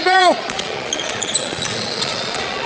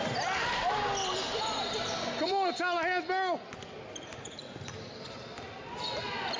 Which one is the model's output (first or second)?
first